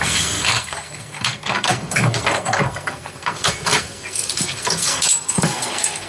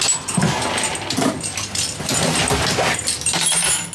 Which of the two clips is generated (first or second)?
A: first